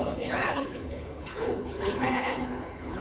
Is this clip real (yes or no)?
no